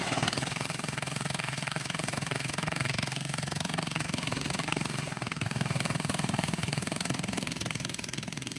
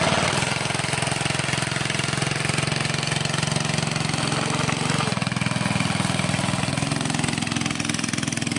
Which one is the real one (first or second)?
second